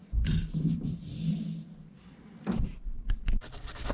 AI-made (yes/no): no